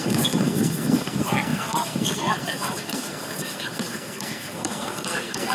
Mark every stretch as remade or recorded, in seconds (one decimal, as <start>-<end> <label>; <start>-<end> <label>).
0.0-5.5 remade